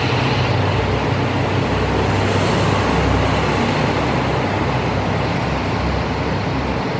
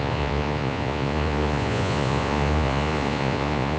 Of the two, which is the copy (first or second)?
second